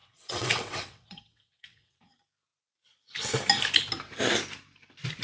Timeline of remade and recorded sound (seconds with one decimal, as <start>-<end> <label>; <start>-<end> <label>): 0.0-2.0 remade; 2.0-5.2 recorded

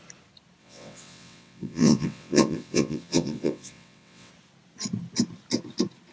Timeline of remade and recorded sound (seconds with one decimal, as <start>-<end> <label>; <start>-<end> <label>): 0.0-0.6 recorded; 0.6-4.3 remade; 4.3-6.1 recorded

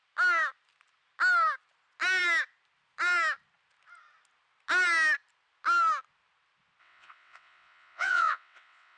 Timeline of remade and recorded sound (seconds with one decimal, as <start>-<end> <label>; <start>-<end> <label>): 0.0-6.8 recorded; 6.8-9.0 remade

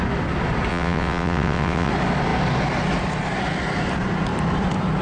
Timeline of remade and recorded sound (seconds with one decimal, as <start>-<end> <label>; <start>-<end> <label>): 0.0-0.7 recorded; 0.7-1.9 remade; 1.9-5.0 recorded

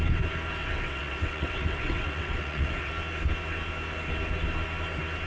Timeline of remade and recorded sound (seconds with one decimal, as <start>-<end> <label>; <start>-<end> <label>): 0.0-0.6 recorded; 0.6-2.9 remade; 2.9-5.3 recorded

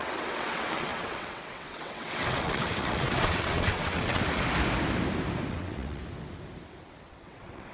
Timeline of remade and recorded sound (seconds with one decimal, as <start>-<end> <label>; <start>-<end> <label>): 0.0-4.2 remade; 4.2-5.5 recorded; 5.5-6.0 remade; 6.0-7.1 recorded; 7.1-7.7 remade

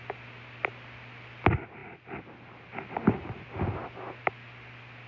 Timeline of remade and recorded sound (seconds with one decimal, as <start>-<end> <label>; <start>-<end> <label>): 0.0-5.1 recorded